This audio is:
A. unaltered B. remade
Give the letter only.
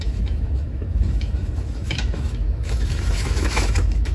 B